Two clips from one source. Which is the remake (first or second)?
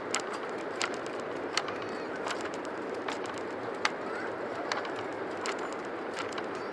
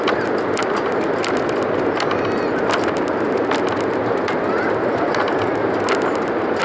first